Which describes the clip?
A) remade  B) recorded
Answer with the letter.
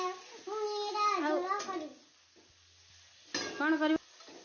B